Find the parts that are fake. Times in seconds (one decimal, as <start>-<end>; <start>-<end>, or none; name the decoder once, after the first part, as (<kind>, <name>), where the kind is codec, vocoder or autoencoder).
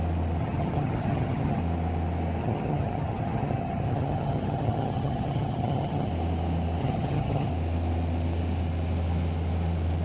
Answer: 0.4-1.6 (vocoder, HiFi-GAN); 2.4-6.1; 6.8-7.5